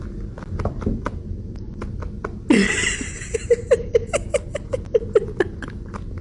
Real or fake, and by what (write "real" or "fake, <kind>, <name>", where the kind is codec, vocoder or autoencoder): real